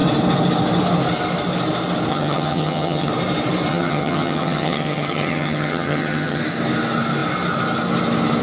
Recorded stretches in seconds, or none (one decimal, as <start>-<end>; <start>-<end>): 0.0-2.1; 3.1-3.7; 6.4-8.4